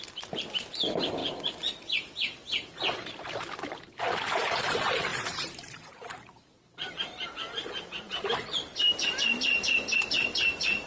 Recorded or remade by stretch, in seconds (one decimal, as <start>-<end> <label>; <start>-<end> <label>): 0.0-5.1 recorded; 5.1-9.1 remade; 9.1-10.9 recorded

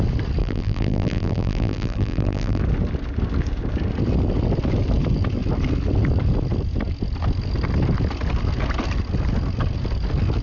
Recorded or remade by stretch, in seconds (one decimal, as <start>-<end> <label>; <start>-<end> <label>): 0.0-0.4 recorded; 0.4-2.6 remade; 2.6-10.4 recorded